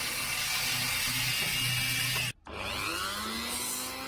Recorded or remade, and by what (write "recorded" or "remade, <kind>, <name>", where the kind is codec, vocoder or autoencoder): recorded